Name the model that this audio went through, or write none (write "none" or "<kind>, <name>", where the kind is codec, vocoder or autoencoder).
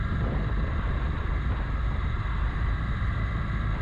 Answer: vocoder, BigVGAN v2